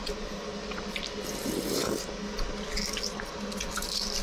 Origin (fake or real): real